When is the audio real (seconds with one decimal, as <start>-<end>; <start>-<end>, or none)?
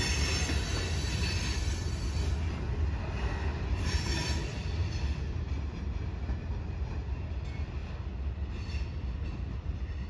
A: 0.0-3.5; 4.3-10.1